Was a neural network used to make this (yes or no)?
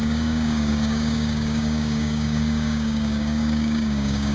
yes